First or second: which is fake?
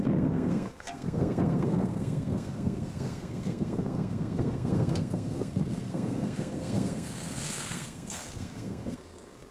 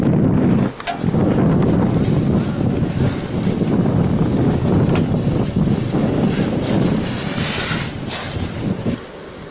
first